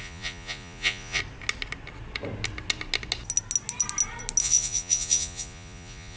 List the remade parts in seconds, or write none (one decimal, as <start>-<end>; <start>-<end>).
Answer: 0.0-1.2; 4.4-6.2